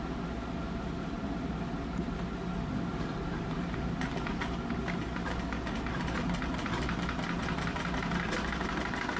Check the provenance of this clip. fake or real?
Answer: real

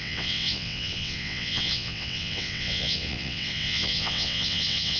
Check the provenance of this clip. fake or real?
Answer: fake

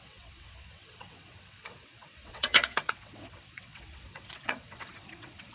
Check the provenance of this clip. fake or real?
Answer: fake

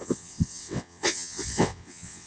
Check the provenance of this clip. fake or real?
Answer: fake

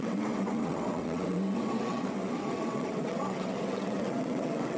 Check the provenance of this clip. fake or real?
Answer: fake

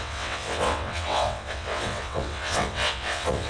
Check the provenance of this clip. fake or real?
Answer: fake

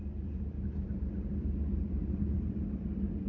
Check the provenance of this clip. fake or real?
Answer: real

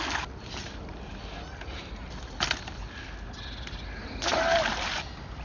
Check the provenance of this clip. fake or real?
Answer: real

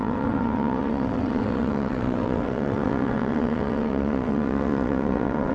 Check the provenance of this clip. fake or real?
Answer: fake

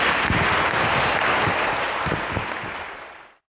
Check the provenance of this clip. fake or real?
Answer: real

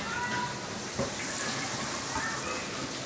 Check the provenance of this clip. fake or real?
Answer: real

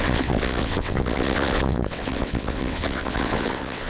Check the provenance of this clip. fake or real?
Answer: fake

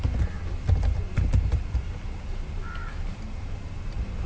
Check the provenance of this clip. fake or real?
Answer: real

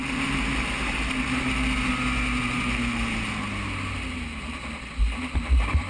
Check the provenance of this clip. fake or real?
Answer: real